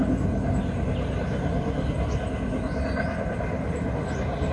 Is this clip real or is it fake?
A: real